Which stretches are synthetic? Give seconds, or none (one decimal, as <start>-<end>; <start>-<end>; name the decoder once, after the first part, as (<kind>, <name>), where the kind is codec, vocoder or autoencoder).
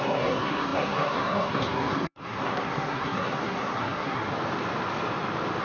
0.0-4.3 (codec, SNAC)